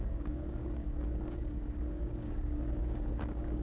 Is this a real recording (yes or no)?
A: no